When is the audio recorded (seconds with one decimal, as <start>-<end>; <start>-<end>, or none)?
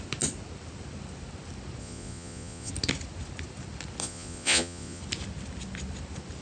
0.0-1.8; 2.7-4.0; 5.0-6.4